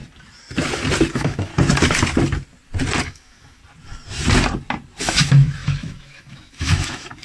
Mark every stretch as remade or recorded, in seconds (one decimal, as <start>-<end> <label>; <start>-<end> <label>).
0.0-1.1 recorded; 1.1-1.5 remade; 1.5-3.0 recorded; 3.0-3.6 remade; 3.6-5.0 recorded; 5.0-7.2 remade